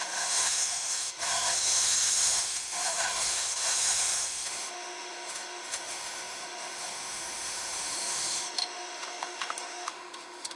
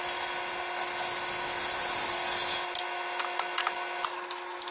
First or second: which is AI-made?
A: first